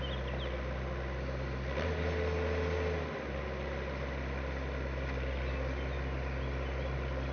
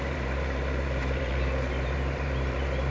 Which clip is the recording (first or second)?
first